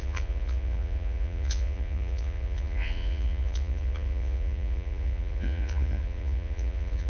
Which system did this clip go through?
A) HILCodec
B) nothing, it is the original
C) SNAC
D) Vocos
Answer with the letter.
D